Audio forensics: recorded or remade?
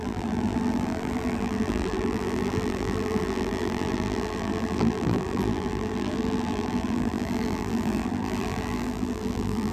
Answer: remade